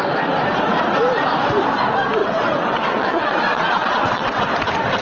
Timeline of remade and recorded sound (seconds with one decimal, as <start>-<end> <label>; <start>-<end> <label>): 0.0-2.2 recorded; 2.2-4.4 remade; 4.4-5.0 recorded